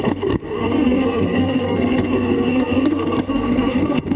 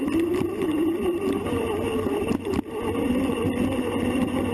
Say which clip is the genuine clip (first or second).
second